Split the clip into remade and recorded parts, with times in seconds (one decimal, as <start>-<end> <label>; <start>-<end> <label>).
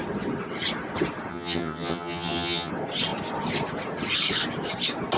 0.0-1.3 recorded; 1.3-2.7 remade; 2.7-5.2 recorded